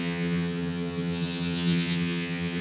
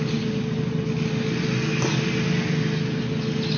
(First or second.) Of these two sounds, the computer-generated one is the first